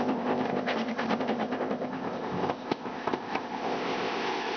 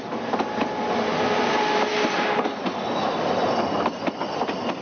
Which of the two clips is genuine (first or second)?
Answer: second